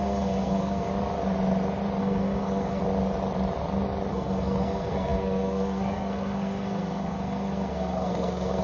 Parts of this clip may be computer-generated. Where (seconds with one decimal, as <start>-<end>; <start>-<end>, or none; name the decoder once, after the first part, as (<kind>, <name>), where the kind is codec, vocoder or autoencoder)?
0.0-0.9 (codec, SNAC); 2.0-2.8; 4.1-8.6